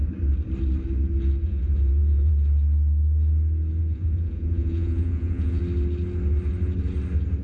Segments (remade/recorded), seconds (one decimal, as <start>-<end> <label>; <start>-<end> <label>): 0.0-1.4 recorded; 1.4-2.3 remade; 2.3-3.8 recorded; 3.8-5.6 remade; 5.6-7.4 recorded